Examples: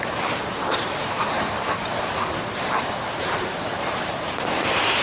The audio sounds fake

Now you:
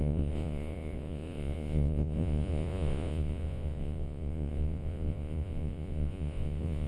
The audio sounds fake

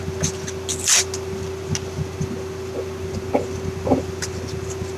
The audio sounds real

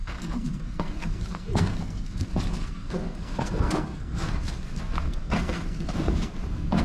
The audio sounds fake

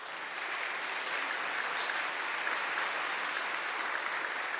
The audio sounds real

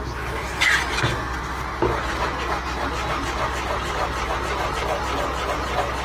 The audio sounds real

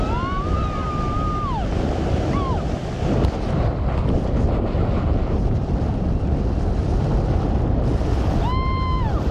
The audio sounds real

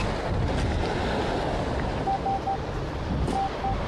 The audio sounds real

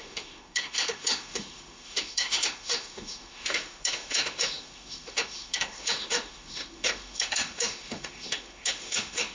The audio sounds fake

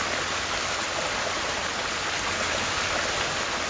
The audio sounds real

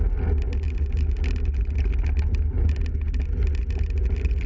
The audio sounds real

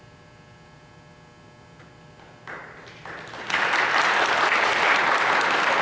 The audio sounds real